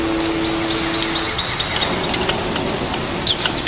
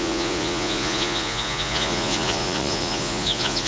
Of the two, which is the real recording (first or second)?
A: first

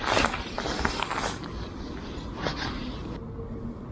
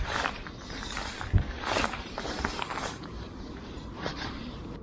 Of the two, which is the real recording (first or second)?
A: first